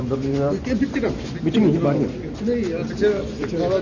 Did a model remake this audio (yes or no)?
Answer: no